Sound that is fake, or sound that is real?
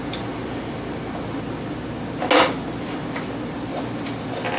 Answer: real